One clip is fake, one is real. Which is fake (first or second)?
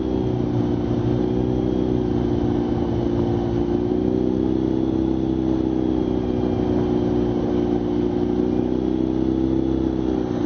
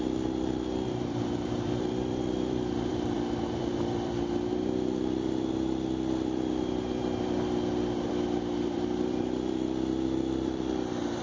second